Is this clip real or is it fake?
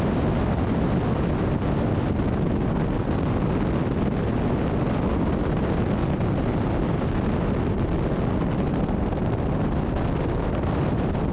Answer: real